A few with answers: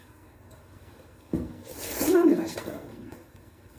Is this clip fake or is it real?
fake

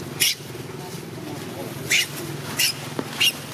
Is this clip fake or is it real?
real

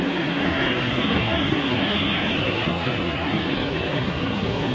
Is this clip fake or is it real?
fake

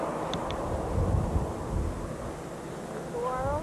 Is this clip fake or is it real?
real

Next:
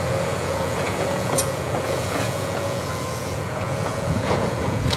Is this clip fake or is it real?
fake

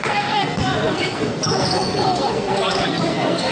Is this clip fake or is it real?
fake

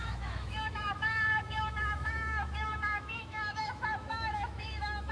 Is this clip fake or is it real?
fake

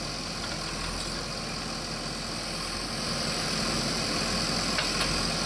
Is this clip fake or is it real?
real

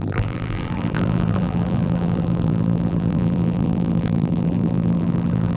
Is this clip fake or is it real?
fake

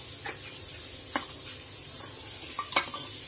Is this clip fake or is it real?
real